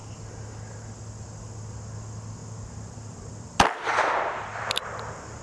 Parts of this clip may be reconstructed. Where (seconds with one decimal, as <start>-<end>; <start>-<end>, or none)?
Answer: none